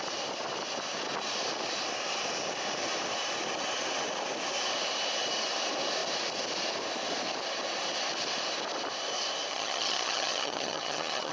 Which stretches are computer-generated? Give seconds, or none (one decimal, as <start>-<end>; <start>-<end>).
9.5-11.3